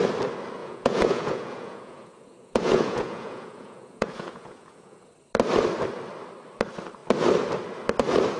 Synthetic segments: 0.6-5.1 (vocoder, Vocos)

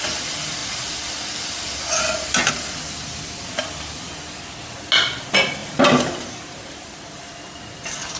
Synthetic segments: 5.6-7.4 (vocoder, BigVGAN v2)

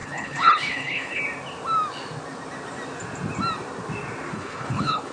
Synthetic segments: 0.0-1.2 (codec, HILCodec); 4.3-5.1

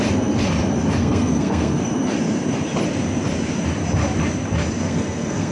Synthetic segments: 1.0-1.9 (codec, SNAC); 4.8-5.5

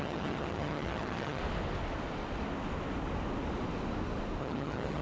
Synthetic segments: 0.0-1.4 (vocoder, HiFi-GAN); 4.4-5.0

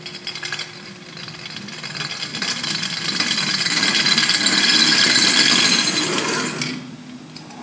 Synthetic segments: none